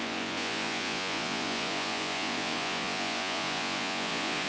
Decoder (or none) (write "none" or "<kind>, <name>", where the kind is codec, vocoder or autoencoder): vocoder, Vocos